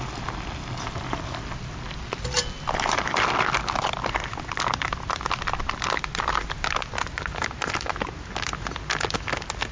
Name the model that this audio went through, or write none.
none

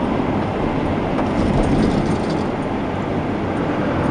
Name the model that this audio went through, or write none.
none